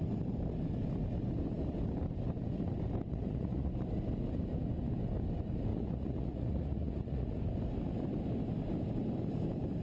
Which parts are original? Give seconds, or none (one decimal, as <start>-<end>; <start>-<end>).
0.0-3.1; 3.7-5.7; 7.4-9.8